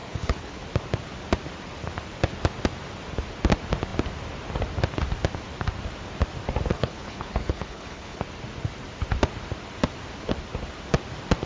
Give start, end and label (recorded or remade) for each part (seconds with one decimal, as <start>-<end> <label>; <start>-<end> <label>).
0.0-0.5 remade; 0.5-6.7 recorded; 6.7-8.2 remade; 8.2-11.5 recorded